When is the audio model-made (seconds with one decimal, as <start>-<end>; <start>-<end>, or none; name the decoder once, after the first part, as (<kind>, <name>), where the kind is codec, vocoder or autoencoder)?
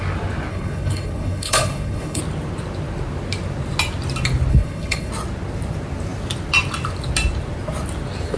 0.5-2.2 (codec, HILCodec); 4.5-5.1